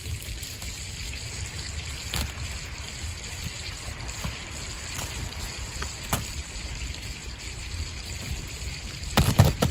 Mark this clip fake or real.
real